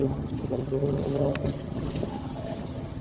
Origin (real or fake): fake